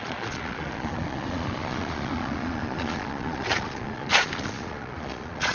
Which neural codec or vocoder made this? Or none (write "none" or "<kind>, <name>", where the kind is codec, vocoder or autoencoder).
vocoder, Vocos